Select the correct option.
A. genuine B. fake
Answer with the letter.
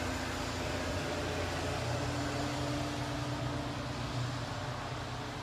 A